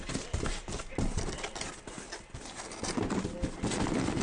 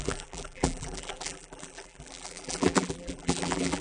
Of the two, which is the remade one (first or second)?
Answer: second